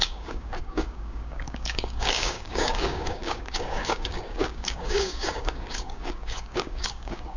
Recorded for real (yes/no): no